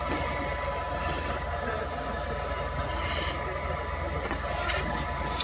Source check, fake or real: real